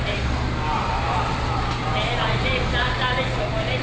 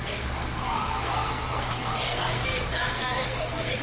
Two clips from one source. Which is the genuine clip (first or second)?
first